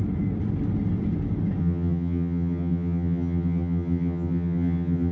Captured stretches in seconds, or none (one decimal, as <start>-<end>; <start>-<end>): 0.0-1.6